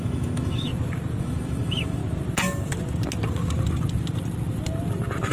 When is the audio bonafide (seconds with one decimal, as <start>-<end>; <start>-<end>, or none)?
0.7-1.2; 2.0-5.3